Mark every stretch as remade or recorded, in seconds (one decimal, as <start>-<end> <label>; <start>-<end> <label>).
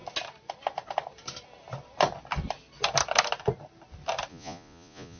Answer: 0.0-4.3 recorded; 4.3-5.2 remade